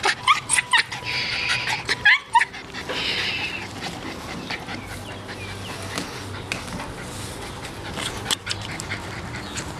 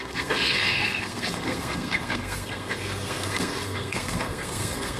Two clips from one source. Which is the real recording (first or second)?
first